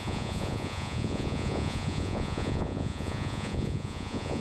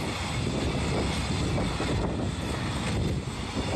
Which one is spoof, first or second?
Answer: first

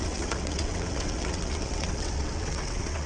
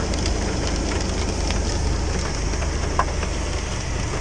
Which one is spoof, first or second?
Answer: first